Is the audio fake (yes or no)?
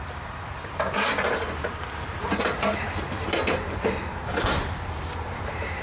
yes